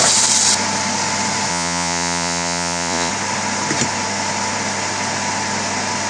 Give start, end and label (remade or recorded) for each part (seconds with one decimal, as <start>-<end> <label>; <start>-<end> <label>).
0.0-1.5 recorded; 1.5-3.1 remade; 3.1-6.1 recorded